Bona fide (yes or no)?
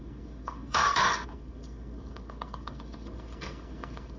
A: no